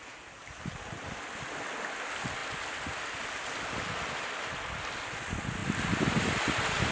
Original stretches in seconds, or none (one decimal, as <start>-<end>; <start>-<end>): 0.0-6.9